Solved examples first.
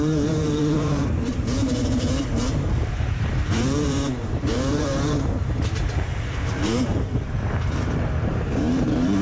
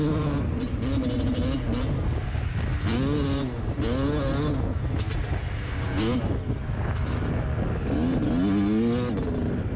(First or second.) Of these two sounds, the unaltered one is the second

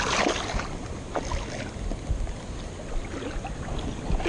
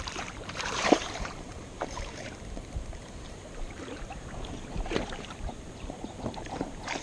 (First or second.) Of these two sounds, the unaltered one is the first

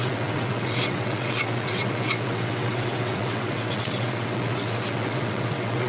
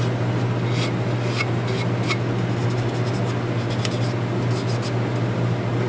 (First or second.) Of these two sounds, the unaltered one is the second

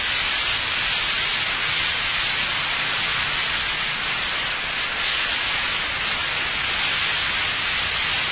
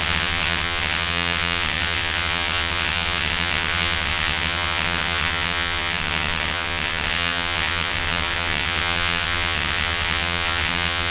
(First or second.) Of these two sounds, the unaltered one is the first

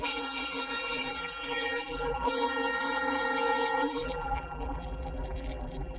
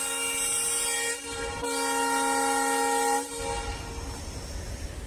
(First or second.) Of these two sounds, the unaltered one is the second